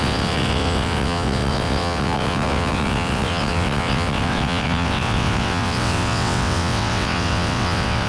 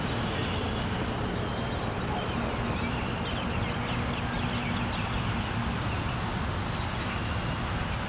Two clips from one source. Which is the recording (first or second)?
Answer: second